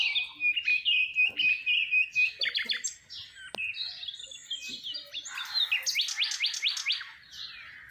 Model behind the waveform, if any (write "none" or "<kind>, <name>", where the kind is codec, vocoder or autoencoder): none